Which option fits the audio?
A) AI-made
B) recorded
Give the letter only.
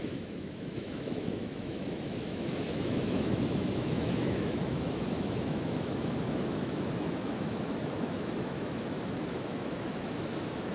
A